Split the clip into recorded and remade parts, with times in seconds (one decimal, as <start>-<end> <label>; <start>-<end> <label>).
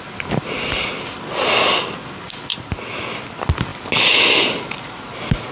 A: 0.0-5.5 recorded